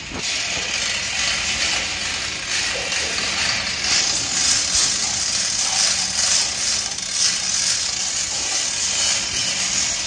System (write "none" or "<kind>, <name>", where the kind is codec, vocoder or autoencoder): none